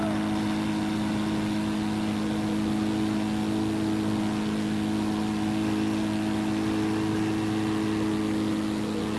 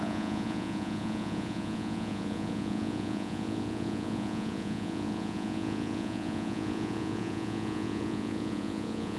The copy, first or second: second